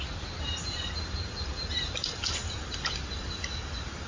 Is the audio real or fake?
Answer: real